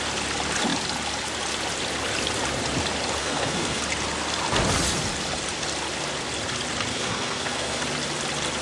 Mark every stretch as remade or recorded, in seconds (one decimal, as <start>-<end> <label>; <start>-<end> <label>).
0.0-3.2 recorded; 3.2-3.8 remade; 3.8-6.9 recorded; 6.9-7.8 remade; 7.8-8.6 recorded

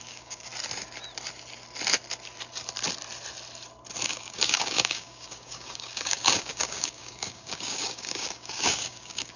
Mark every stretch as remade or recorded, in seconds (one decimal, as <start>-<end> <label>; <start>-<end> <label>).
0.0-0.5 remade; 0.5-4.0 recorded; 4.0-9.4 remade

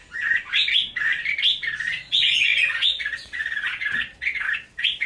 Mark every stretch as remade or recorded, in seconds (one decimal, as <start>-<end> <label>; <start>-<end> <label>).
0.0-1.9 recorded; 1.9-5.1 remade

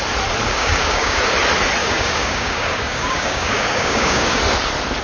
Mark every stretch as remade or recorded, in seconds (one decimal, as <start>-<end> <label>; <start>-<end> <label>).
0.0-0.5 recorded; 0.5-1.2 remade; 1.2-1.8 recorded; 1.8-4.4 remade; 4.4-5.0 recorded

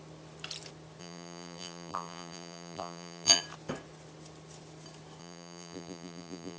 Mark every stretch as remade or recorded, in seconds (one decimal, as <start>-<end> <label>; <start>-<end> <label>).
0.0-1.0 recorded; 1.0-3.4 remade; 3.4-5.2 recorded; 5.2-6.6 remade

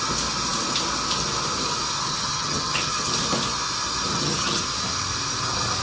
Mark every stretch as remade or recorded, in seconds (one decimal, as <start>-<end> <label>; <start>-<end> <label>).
0.0-2.1 recorded; 2.1-3.1 remade; 3.1-4.1 recorded; 4.1-4.6 remade; 4.6-5.8 recorded